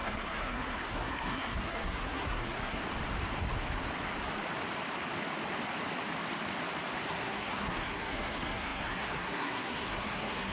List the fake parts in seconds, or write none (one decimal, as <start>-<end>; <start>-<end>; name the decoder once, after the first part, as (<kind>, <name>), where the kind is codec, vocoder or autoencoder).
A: 0.0-2.8 (codec, SNAC); 7.1-10.5